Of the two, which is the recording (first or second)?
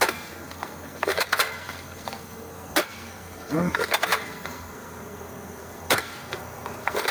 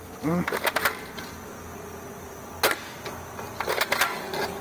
second